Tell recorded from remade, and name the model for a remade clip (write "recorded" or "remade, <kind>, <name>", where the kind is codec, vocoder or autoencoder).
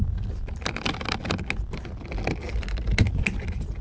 recorded